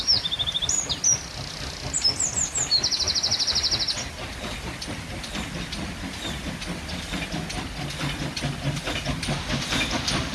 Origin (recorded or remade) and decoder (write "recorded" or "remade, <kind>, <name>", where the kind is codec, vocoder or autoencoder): recorded